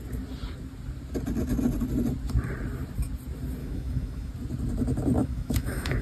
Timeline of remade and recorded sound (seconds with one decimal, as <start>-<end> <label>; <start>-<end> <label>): 0.0-3.6 recorded; 3.6-4.3 remade; 4.3-5.2 recorded; 5.2-6.0 remade